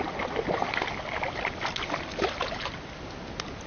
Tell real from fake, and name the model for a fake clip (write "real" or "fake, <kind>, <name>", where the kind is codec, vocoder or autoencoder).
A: real